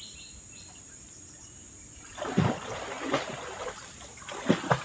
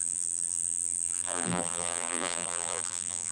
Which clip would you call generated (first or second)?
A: second